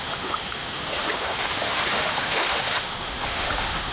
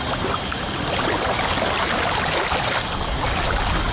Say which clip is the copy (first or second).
first